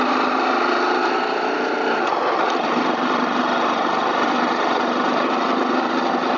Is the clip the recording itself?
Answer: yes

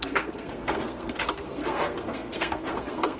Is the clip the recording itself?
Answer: no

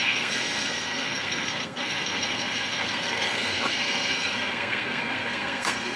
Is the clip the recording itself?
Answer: no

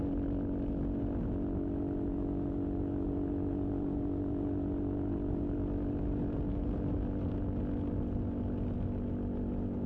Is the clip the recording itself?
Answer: yes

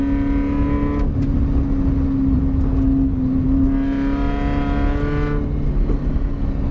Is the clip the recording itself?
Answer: yes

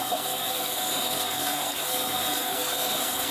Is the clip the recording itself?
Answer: no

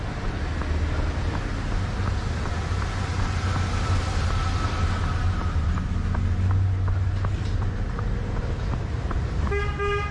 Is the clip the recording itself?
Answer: yes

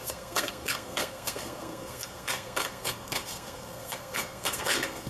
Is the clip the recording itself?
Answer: no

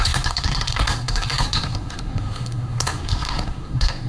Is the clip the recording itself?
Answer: no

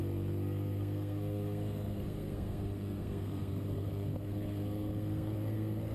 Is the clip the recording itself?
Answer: no